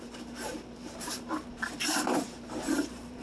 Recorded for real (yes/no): no